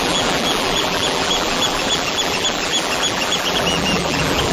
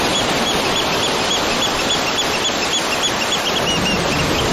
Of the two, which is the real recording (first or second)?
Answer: second